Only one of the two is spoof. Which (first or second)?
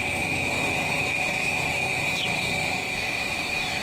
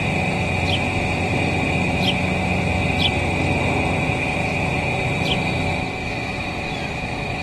first